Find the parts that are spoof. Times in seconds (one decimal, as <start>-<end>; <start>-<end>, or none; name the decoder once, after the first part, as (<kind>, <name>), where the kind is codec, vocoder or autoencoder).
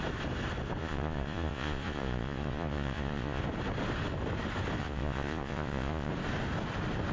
0.8-3.4 (vocoder, Vocos); 4.8-6.1